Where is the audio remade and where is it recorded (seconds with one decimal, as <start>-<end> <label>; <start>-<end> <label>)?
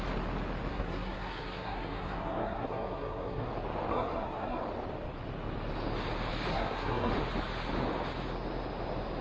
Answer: 0.0-0.7 recorded; 0.7-3.5 remade; 3.5-3.9 recorded; 3.9-4.6 remade; 4.6-6.5 recorded; 6.5-7.1 remade; 7.1-9.2 recorded